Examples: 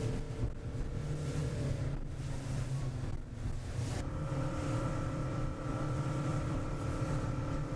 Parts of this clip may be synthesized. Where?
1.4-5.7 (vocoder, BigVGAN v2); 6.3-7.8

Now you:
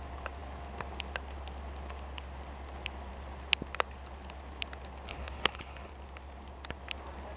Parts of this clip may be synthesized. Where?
5.1-5.9 (codec, HILCodec)